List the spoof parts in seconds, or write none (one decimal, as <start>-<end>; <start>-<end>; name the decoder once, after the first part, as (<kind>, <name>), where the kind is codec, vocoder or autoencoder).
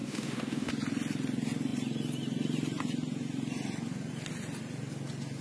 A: 0.0-0.7 (codec, DAC)